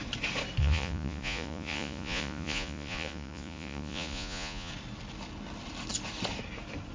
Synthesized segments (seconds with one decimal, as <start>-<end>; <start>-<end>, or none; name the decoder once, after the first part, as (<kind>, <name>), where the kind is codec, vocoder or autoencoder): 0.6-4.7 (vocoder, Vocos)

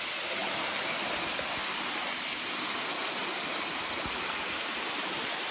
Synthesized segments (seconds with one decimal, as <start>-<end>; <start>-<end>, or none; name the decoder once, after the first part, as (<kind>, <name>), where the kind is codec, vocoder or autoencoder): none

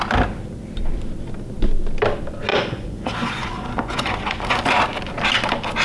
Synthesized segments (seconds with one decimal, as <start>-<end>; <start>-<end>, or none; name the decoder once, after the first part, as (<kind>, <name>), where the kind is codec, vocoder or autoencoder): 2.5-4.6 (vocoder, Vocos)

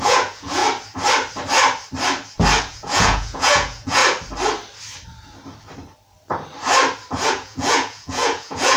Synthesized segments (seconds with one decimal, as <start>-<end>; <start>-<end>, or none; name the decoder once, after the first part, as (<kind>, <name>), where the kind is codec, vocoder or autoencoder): 0.0-0.6 (vocoder, Vocos); 2.6-4.0; 7.3-8.8